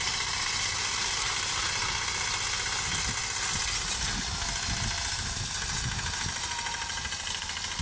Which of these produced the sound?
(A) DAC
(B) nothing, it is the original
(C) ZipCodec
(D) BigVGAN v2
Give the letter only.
B